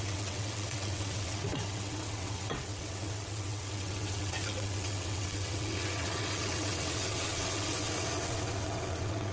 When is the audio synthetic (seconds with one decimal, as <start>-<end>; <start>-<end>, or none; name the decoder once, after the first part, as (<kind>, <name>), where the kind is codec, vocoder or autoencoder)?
0.0-9.3 (vocoder, WaveNeXt)